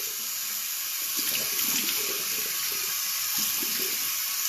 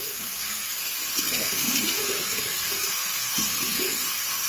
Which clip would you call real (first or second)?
first